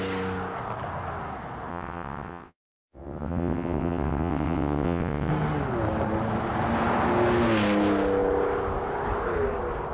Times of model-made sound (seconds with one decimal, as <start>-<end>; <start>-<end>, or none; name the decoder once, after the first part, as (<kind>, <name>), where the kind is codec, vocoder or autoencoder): 1.7-5.3 (vocoder, WaveNeXt)

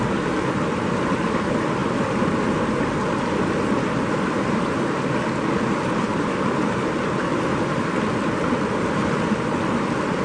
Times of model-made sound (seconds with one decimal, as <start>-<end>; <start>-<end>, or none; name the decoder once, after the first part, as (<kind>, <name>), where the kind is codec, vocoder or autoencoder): none

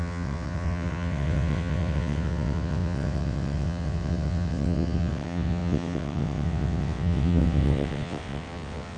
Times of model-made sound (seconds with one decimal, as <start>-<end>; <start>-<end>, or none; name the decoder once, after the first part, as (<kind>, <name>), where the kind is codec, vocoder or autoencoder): 0.0-9.0 (vocoder, WaveNeXt)